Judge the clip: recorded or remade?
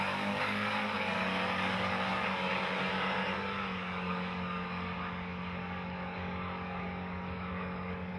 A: remade